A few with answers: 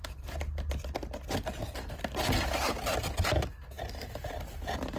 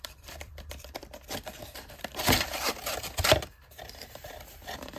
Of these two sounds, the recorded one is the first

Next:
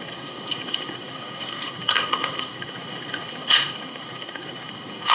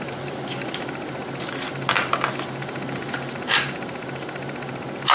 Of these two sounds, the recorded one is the second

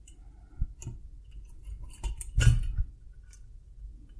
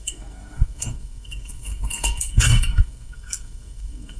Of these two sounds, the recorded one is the first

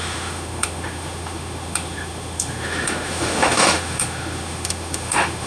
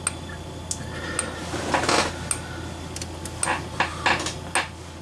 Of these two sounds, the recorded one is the second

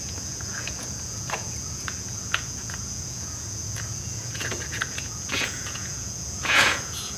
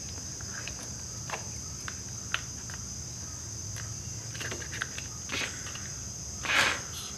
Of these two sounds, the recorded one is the second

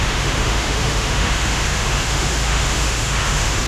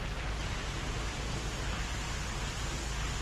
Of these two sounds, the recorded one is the second